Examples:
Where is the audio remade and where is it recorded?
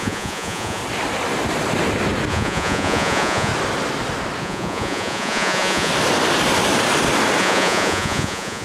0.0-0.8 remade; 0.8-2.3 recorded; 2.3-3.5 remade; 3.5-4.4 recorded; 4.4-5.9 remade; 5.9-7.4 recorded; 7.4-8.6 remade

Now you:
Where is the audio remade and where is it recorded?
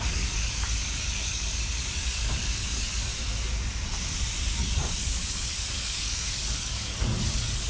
0.0-3.1 remade; 3.1-4.6 recorded; 4.6-7.7 remade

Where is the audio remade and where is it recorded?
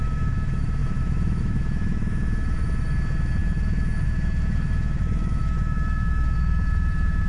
0.0-7.3 remade